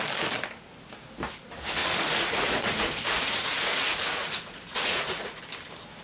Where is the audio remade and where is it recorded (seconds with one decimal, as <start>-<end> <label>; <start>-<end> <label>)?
0.0-1.8 recorded; 1.8-5.4 remade; 5.4-6.0 recorded